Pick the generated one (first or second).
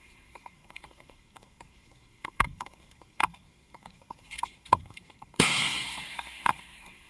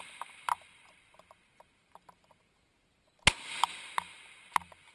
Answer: first